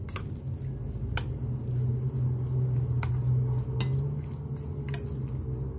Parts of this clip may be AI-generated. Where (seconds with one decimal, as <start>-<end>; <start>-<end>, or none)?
none